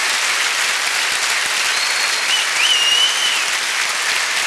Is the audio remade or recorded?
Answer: recorded